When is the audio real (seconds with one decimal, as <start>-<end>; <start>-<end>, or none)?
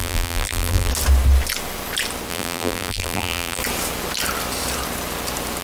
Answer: 0.9-2.3; 3.6-5.6